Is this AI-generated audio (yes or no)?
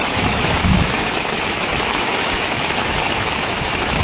yes